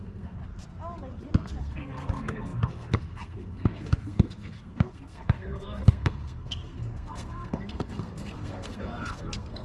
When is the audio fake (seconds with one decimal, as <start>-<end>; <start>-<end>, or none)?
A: 0.0-0.4; 1.6-9.6